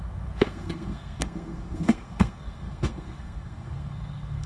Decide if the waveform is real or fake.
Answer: fake